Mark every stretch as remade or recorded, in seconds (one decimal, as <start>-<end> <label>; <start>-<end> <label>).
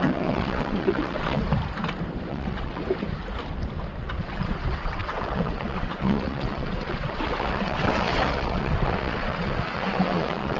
0.0-1.4 remade; 1.4-2.3 recorded; 2.3-2.8 remade; 2.8-4.0 recorded; 4.0-10.6 remade